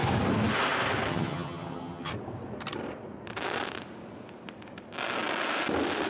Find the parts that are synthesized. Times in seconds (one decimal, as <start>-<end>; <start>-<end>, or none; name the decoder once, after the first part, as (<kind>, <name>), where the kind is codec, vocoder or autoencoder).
1.1-2.1 (vocoder, HiFi-GAN)